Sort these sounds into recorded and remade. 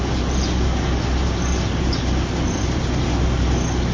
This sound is recorded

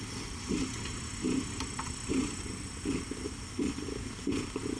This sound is recorded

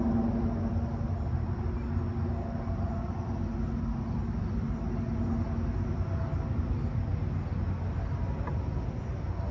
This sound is recorded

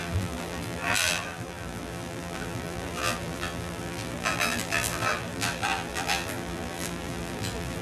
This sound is remade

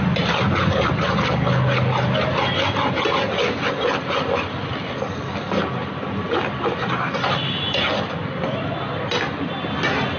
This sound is recorded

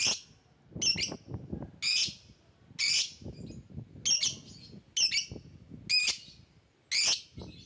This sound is recorded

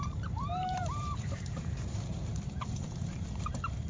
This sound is remade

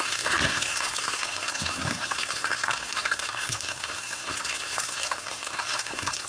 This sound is remade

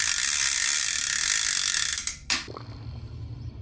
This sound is recorded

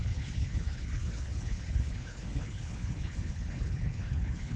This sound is remade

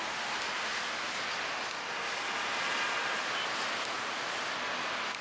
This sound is recorded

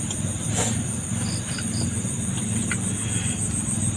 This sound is recorded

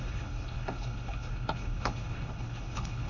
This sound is remade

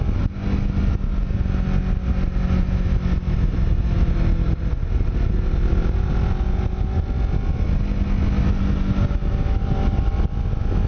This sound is recorded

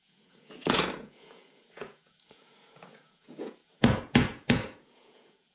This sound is remade